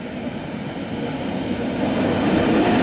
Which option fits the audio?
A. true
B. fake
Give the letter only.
A